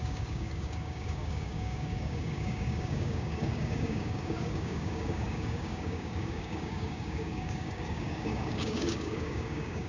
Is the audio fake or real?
fake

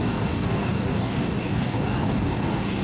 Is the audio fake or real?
fake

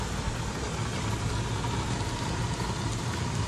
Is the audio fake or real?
real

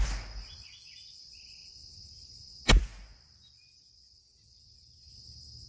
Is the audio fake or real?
real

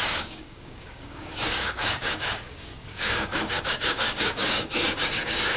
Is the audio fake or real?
fake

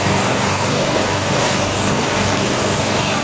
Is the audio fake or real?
fake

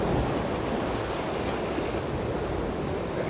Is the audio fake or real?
real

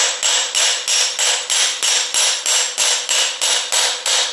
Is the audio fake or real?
real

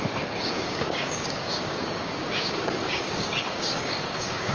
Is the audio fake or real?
fake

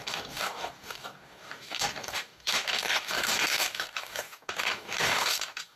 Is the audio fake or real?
fake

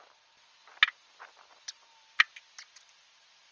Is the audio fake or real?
real